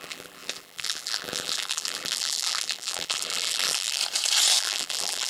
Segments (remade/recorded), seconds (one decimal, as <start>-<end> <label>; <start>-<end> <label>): 0.0-4.0 remade; 4.0-4.6 recorded; 4.6-5.3 remade